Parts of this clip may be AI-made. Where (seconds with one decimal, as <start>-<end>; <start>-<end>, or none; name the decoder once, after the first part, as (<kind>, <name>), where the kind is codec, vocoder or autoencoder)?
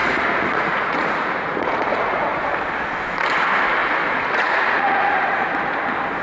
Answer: 0.0-2.3 (vocoder, Vocos); 3.8-5.8